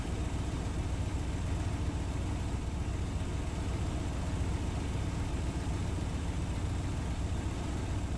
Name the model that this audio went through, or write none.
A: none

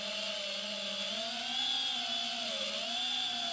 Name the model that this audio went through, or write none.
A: none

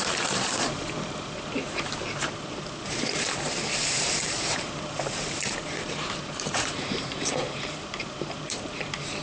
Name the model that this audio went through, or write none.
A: vocoder, BigVGAN v2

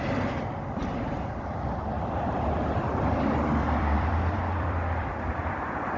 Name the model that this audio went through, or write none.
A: vocoder, BigVGAN v2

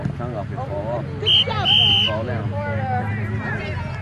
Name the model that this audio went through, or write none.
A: none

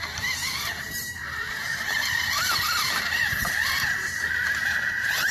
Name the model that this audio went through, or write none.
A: vocoder, BigVGAN v2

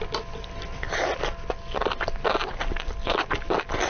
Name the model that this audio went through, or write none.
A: none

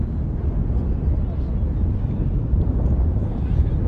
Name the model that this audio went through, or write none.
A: none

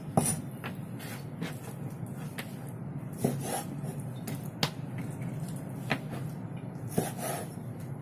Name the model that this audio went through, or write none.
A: none